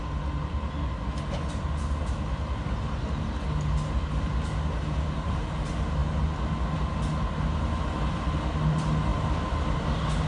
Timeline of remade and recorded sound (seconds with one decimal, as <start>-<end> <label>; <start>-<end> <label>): 0.0-10.3 recorded